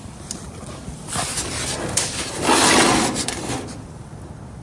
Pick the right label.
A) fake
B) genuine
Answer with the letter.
B